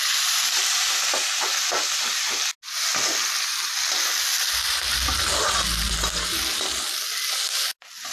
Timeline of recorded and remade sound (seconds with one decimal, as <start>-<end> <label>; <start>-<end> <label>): 0.0-8.1 recorded